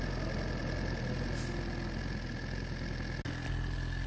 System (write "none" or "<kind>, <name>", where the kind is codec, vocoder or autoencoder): none